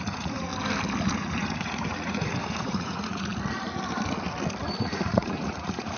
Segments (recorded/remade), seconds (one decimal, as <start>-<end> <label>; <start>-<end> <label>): 0.0-0.5 remade; 0.5-1.0 recorded; 1.0-3.3 remade; 3.3-4.8 recorded; 4.8-6.0 remade